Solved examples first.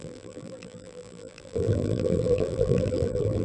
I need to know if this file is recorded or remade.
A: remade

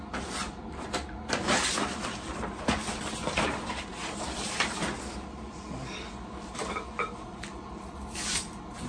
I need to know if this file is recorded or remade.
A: remade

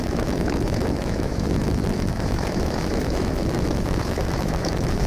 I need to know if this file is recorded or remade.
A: remade